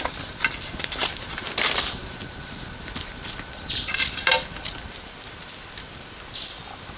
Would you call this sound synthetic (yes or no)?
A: no